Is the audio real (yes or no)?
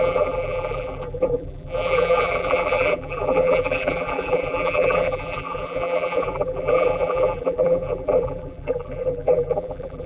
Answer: no